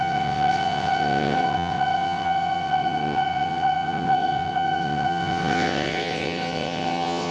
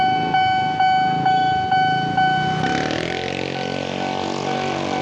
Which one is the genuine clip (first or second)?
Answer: second